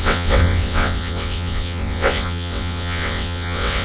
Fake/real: fake